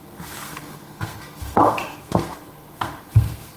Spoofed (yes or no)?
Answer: yes